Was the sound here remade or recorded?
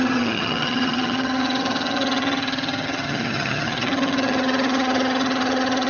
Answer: remade